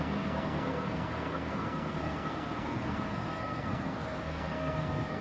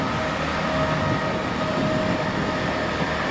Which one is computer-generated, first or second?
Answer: first